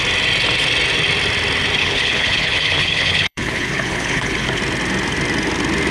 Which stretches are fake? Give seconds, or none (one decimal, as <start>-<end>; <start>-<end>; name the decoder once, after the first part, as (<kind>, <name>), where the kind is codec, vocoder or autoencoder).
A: 1.8-4.6 (codec, HILCodec)